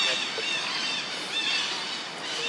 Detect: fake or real real